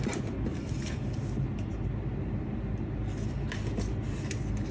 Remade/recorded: recorded